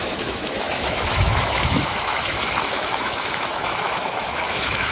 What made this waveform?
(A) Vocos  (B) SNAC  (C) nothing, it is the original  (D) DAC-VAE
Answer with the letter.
D